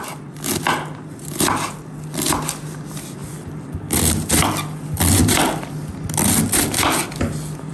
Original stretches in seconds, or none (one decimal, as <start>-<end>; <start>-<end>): 0.0-7.7